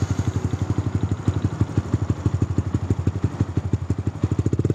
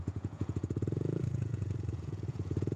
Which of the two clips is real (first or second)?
first